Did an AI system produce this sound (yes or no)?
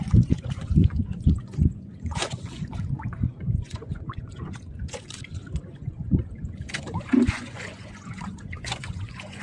yes